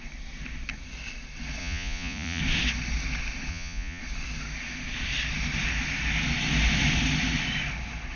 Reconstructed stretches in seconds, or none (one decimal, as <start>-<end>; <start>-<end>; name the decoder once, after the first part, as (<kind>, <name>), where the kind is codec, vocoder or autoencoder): 1.6-2.4 (vocoder, Vocos); 3.5-4.0